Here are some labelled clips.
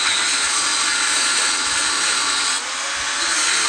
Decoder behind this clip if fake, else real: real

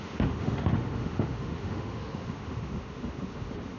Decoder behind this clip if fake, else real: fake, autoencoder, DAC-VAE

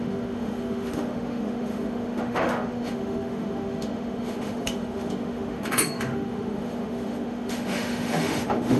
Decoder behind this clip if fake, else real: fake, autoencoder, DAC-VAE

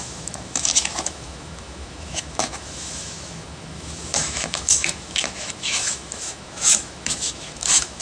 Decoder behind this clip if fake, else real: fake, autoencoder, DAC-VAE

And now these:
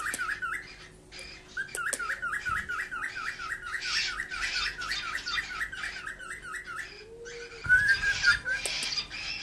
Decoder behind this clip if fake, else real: real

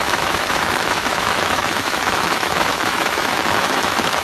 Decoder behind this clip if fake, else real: fake, autoencoder, DAC-VAE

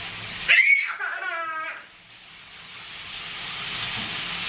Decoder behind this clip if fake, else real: real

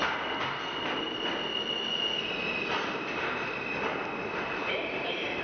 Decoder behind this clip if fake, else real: real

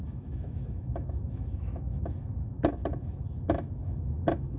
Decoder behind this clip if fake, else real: fake, autoencoder, DAC-VAE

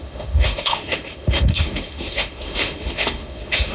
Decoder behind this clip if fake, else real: fake, autoencoder, DAC-VAE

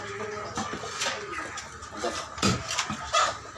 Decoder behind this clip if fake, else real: real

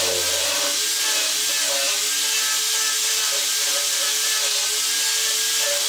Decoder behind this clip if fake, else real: real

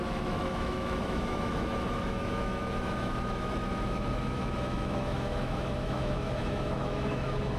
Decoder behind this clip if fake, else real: fake, autoencoder, DAC-VAE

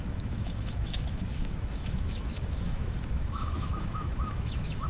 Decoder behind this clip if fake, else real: fake, autoencoder, DAC-VAE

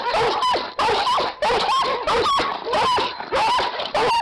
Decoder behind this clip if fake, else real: real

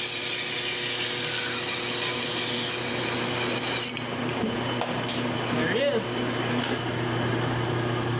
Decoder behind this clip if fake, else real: real